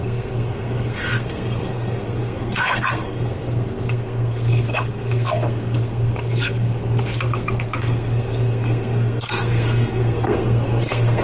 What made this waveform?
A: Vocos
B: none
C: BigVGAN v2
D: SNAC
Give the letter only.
D